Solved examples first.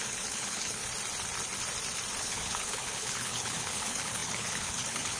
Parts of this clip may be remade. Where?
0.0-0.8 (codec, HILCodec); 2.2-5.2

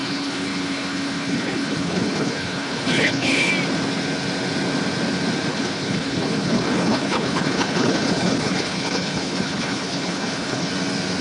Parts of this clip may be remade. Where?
0.0-3.5 (codec, HILCodec); 5.5-10.7

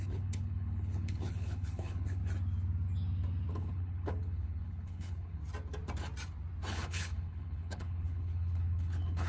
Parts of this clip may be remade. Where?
0.0-2.2 (codec, HILCodec); 3.5-5.4; 6.7-9.3

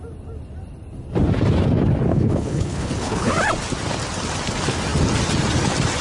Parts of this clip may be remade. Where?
2.1-3.3 (codec, HILCodec)

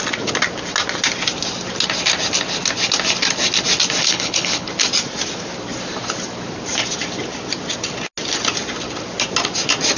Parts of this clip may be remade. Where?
4.0-4.7 (codec, HILCodec)

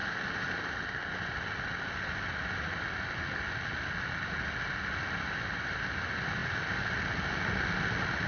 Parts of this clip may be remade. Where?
none

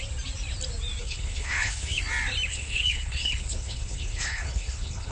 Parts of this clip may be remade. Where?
1.0-2.0 (codec, HILCodec); 2.5-5.1

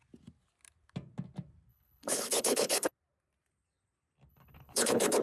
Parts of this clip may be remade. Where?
1.7-2.9 (codec, HILCodec); 4.3-5.2